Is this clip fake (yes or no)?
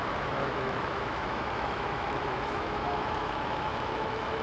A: yes